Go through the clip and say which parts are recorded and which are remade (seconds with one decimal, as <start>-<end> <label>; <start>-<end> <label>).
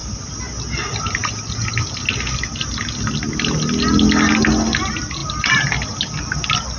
0.0-6.8 recorded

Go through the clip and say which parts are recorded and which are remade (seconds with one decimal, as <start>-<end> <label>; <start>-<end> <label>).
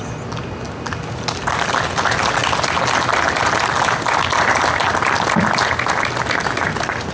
0.0-7.1 recorded